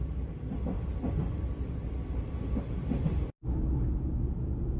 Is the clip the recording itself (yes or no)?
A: yes